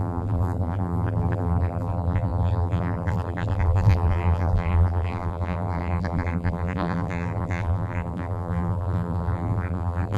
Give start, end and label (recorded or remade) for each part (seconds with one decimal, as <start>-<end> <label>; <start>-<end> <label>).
0.0-10.2 remade